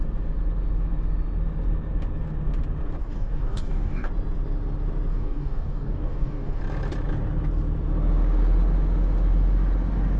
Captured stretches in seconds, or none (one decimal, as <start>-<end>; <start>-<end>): 0.0-3.0; 4.1-5.1; 6.6-10.2